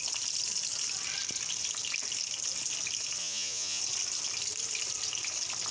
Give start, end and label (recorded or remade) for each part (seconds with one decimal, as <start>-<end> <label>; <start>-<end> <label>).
0.0-3.2 recorded; 3.2-3.8 remade; 3.8-5.7 recorded